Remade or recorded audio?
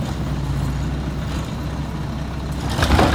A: recorded